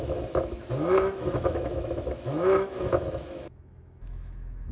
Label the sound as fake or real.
fake